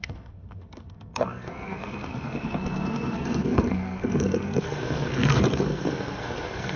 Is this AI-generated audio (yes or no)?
yes